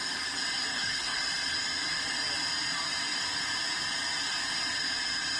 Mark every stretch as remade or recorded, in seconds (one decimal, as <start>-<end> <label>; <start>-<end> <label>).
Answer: 0.0-0.7 recorded; 0.7-1.2 remade; 1.2-5.4 recorded